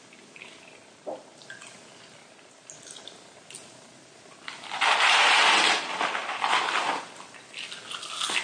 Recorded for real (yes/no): yes